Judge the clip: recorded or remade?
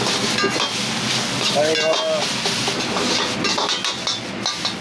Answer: recorded